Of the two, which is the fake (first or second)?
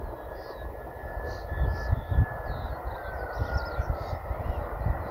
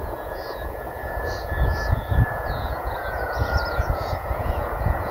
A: second